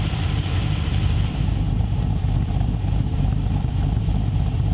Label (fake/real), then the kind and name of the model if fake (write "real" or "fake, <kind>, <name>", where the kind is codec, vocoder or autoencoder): fake, vocoder, BigVGAN v2